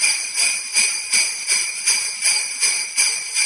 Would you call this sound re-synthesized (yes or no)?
no